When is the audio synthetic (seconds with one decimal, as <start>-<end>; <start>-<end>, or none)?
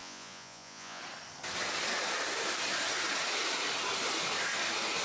0.0-1.0